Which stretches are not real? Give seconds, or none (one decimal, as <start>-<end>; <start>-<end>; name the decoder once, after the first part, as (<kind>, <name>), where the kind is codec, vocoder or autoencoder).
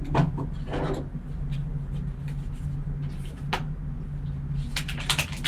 none